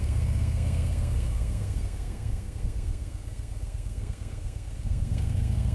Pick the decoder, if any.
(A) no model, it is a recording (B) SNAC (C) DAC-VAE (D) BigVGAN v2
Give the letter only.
B